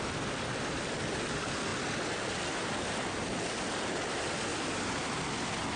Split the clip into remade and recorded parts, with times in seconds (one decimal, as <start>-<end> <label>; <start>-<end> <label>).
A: 0.0-1.7 remade; 1.7-3.8 recorded; 3.8-4.5 remade; 4.5-5.8 recorded